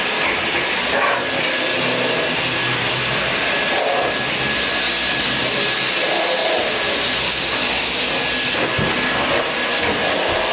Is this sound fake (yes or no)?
no